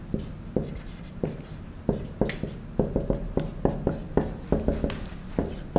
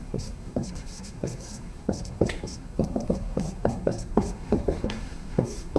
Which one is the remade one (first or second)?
second